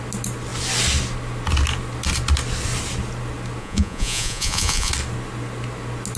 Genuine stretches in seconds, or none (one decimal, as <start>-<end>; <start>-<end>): 0.0-3.6; 4.9-6.2